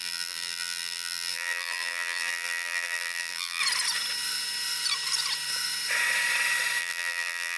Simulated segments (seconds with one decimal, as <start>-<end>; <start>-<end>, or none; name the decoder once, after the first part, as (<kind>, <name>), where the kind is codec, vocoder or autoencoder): 0.0-3.6 (vocoder, BigVGAN v2); 6.8-7.6